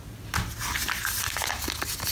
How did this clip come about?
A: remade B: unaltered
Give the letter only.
B